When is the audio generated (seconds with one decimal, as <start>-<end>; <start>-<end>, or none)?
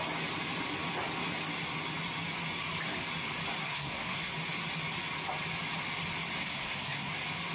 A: 3.6-4.3; 6.4-7.1